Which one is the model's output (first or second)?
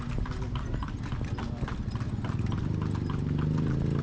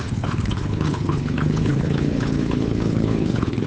second